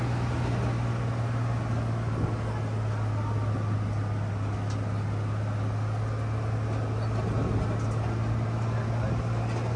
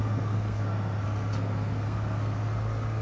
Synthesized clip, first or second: second